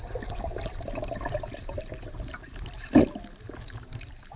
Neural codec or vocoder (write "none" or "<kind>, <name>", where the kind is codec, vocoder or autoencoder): none